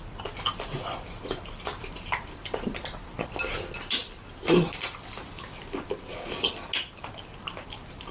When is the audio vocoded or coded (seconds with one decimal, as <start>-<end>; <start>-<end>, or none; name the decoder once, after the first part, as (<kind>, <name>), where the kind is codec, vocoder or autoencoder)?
4.0-5.6 (vocoder, BigVGAN v2)